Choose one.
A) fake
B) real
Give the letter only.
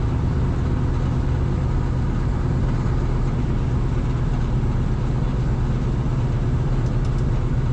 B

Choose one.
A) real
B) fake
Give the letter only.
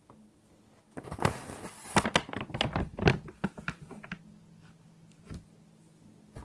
A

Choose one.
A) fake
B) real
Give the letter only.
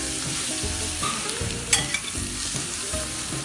A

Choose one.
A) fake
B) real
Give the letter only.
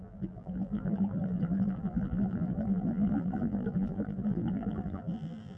A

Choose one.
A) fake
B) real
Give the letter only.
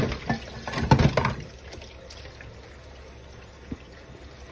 B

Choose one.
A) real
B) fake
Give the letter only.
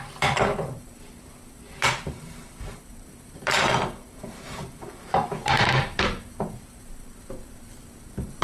B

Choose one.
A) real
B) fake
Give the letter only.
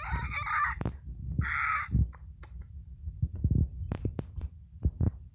A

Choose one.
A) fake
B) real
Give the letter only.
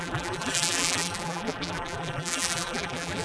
A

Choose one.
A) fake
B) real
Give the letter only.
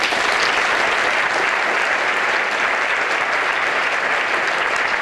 B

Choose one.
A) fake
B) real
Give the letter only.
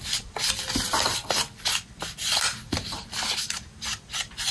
B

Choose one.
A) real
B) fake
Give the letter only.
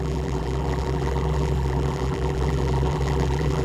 B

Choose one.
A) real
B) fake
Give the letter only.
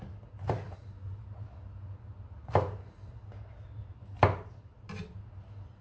A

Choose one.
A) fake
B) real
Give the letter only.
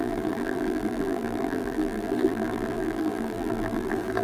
A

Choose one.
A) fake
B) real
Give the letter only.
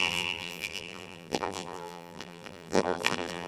A